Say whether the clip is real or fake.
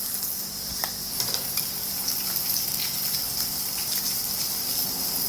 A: real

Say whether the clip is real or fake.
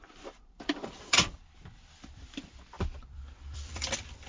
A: fake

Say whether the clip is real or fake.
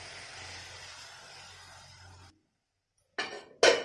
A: real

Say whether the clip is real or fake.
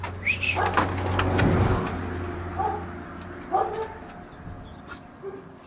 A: real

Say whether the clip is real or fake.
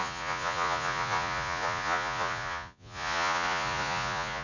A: fake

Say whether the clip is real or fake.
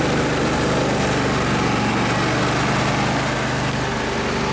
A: real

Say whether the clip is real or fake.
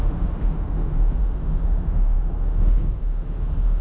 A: fake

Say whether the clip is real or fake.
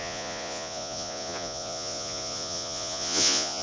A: fake